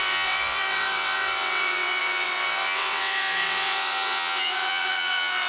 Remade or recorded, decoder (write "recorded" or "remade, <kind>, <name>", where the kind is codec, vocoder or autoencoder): remade, vocoder, WaveNeXt